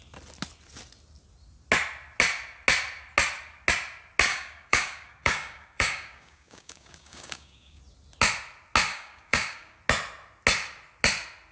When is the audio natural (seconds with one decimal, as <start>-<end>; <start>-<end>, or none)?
0.0-4.3; 7.8-8.9; 9.8-11.5